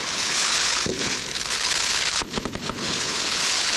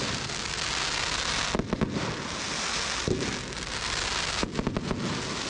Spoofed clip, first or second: first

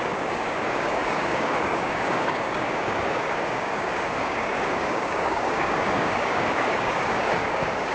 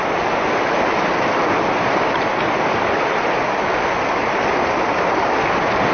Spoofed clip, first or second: first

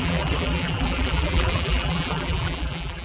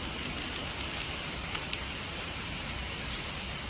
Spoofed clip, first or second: first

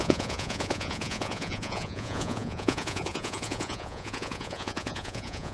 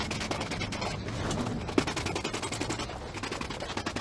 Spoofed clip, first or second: first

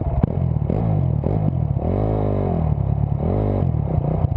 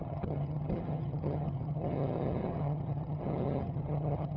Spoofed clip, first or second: second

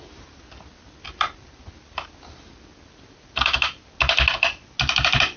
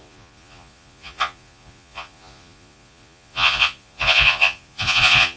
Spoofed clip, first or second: second